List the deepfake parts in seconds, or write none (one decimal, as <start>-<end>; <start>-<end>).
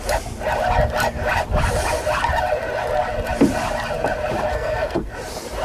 4.5-5.1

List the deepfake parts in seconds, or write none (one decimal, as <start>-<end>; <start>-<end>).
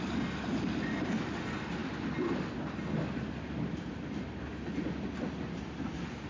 none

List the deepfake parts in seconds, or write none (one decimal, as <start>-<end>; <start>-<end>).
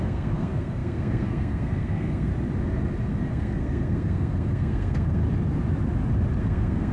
0.0-2.3; 3.3-5.2; 6.4-6.9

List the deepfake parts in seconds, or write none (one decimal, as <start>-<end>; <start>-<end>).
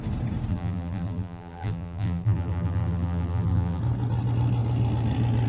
0.5-3.8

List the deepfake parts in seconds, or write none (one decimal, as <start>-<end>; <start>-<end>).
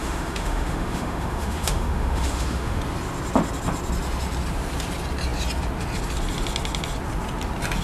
0.0-2.8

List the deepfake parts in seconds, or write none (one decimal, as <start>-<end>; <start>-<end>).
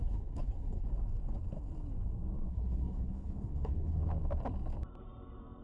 0.0-0.9; 2.5-4.0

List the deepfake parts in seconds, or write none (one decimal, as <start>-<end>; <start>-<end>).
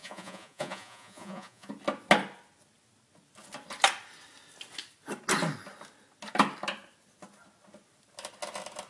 0.0-1.7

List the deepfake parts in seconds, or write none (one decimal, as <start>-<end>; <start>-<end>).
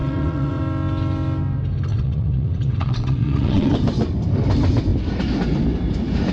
0.0-0.6; 1.9-3.7